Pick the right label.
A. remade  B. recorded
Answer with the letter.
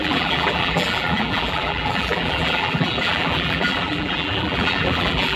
A